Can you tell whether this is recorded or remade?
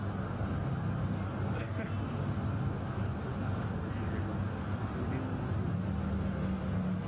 recorded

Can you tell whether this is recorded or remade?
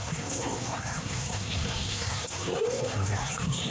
remade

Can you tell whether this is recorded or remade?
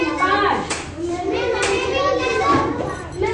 remade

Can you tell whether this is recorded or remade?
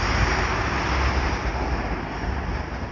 recorded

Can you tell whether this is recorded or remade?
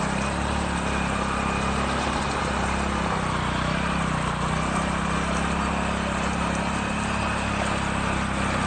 recorded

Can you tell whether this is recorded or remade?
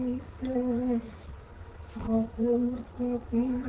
remade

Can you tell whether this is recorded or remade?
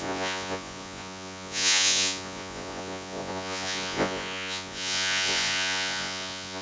remade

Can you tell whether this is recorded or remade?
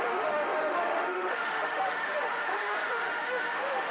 remade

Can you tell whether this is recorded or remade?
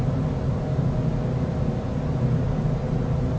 recorded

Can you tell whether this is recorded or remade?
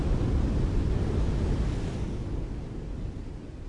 recorded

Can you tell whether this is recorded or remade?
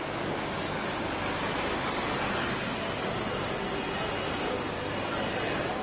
recorded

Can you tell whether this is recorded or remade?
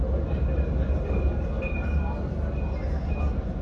recorded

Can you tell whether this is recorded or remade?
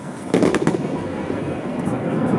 remade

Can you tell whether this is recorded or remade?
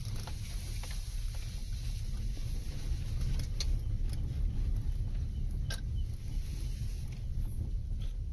recorded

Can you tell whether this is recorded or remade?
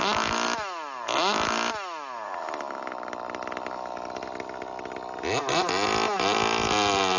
recorded